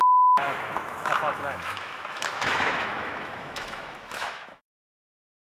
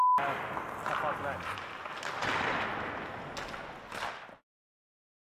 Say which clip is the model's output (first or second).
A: first